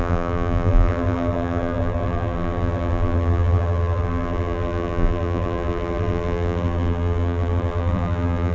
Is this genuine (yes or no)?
no